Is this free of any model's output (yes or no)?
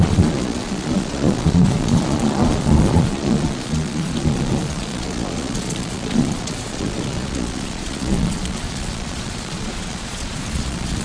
no